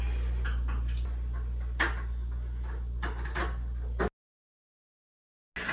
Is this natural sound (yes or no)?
yes